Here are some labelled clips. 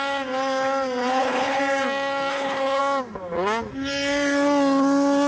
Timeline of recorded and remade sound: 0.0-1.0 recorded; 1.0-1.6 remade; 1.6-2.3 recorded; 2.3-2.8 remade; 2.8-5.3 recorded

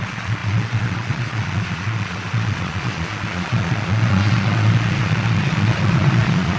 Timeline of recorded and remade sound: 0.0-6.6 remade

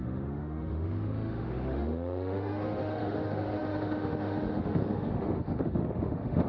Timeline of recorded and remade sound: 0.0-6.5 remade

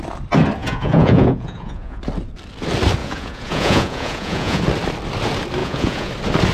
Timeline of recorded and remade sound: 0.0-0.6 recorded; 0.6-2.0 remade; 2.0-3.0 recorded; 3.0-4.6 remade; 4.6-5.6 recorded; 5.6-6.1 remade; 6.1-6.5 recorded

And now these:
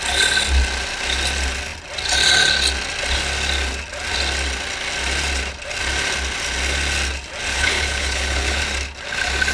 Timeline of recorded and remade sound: 0.0-7.5 recorded; 7.5-8.6 remade; 8.6-9.5 recorded